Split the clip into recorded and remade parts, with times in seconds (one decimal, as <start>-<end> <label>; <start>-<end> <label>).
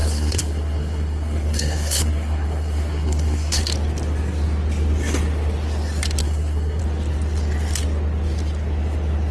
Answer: 0.0-3.6 remade; 3.6-6.2 recorded; 6.2-6.8 remade; 6.8-9.3 recorded